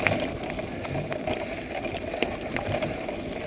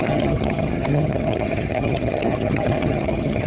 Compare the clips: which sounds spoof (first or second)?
second